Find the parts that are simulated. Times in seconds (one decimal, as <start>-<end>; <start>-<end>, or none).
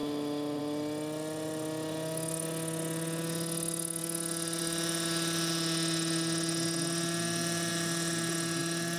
none